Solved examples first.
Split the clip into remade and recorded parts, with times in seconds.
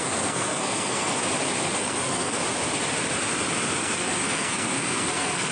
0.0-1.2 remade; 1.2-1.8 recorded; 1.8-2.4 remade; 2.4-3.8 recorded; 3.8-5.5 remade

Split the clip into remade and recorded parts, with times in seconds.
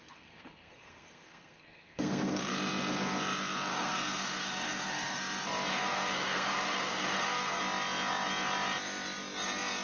0.0-2.5 remade; 2.5-3.7 recorded; 3.7-5.2 remade; 5.2-5.7 recorded; 5.7-7.6 remade; 7.6-9.8 recorded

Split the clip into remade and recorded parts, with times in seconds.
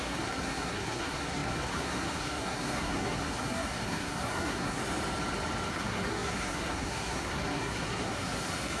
0.0-4.8 remade; 4.8-5.7 recorded; 5.7-8.8 remade